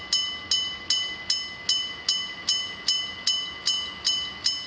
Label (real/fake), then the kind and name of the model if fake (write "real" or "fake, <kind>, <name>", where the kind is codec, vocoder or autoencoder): real